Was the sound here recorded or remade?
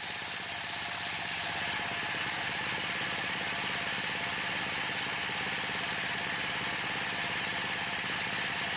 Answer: recorded